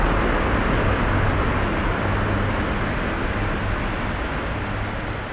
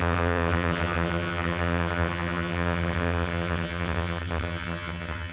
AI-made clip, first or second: second